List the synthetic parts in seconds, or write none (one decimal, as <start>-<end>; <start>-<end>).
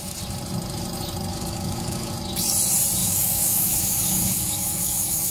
1.3-2.1; 3.0-5.3